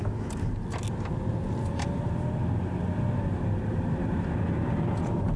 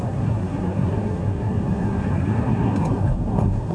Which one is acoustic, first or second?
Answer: first